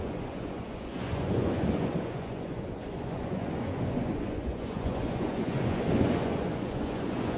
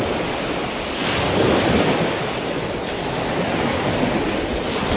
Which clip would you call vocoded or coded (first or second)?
first